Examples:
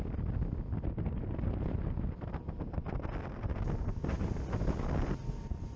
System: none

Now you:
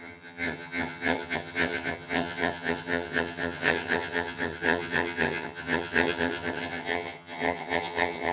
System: vocoder, HiFi-GAN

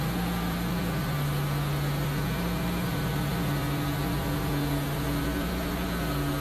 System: none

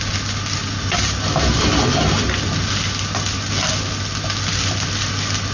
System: none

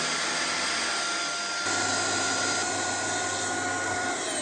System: none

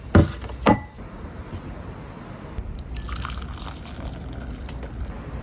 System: vocoder, BigVGAN v2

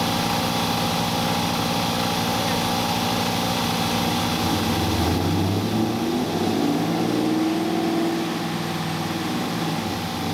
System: none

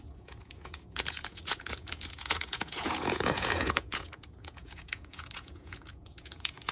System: vocoder, Vocos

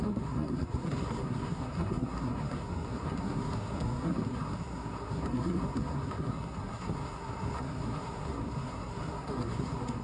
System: codec, SNAC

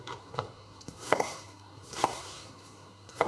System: codec, SNAC